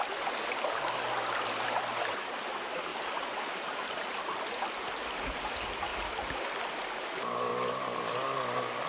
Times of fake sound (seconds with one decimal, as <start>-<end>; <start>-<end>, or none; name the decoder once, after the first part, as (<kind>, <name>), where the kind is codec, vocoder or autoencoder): 2.9-4.7 (vocoder, BigVGAN v2)